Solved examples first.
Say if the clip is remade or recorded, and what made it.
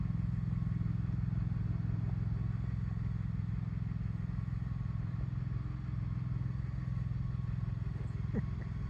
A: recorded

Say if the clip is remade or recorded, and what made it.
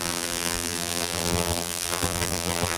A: remade, vocoder, BigVGAN v2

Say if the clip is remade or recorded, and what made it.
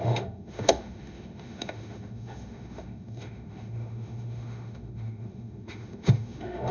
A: remade, autoencoder, DAC-VAE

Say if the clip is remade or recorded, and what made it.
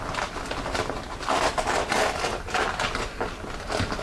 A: recorded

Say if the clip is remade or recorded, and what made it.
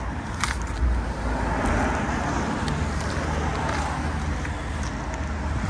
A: recorded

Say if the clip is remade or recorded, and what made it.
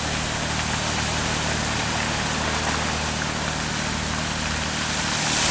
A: recorded